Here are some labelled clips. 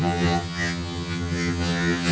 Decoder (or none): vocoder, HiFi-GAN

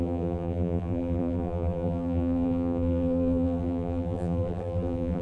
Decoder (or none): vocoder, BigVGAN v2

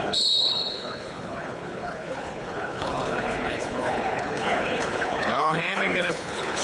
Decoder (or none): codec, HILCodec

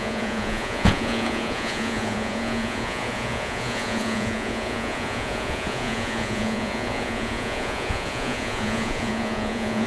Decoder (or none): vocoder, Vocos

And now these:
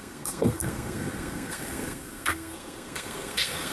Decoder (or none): codec, SNAC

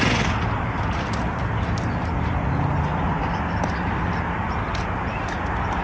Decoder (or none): none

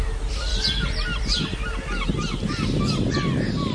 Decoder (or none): none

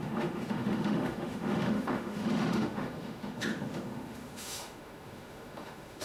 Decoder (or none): autoencoder, DAC-VAE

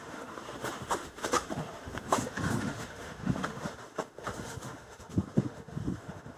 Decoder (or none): autoencoder, DAC-VAE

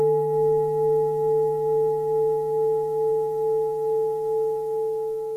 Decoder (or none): none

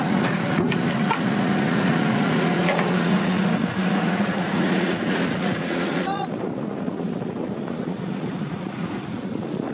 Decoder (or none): vocoder, Vocos